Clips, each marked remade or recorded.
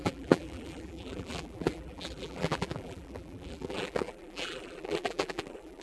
remade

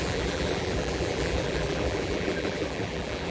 remade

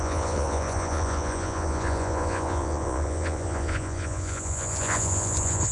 remade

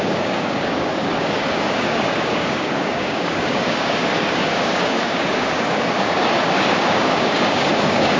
remade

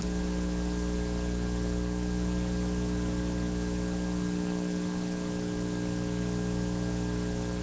recorded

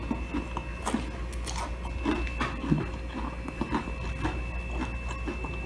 recorded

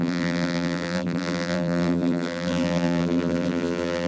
remade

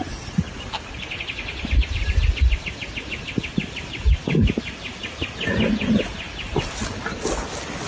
recorded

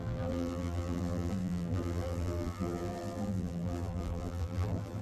remade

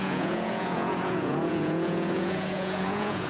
remade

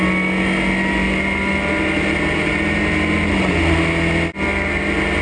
recorded